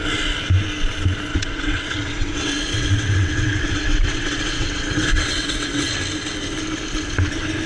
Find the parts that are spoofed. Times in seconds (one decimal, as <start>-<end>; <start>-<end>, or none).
1.3-5.9